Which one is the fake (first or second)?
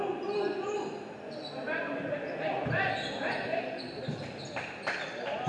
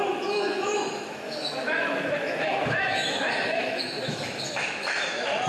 second